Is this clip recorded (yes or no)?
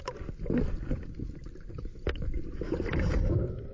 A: yes